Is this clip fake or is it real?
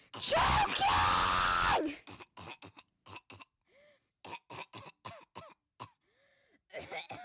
real